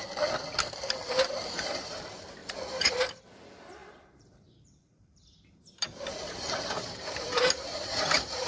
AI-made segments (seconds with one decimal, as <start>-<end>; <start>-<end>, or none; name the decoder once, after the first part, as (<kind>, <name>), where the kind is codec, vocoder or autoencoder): 1.1-8.5 (vocoder, BigVGAN v2)

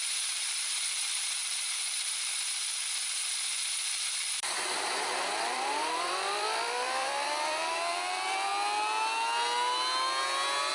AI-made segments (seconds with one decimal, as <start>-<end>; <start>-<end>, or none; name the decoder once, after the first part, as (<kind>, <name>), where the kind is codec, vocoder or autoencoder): 0.0-1.4 (vocoder, BigVGAN v2); 4.2-8.5

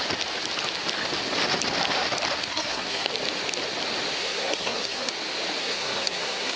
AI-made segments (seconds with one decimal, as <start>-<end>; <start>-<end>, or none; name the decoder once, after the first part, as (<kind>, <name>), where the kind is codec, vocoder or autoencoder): 2.5-3.1 (codec, SNAC); 4.2-5.1; 5.6-6.6

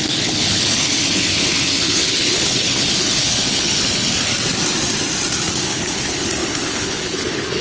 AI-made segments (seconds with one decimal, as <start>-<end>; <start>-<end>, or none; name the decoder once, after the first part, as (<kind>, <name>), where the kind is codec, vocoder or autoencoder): 0.0-4.3 (codec, HILCodec); 5.5-7.6

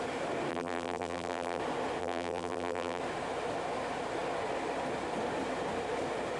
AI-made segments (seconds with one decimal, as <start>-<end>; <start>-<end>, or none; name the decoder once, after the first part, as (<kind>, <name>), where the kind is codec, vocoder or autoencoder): 0.5-1.6 (vocoder, BigVGAN v2); 2.0-3.0

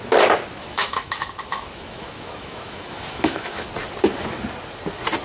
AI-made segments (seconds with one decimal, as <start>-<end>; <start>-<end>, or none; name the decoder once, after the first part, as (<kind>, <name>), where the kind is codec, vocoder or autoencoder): 0.6-3.7 (autoencoder, DAC-VAE)

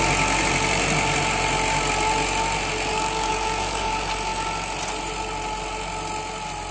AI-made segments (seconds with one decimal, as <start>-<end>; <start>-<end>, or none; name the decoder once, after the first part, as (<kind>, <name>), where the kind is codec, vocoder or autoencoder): 2.9-3.9 (codec, DAC)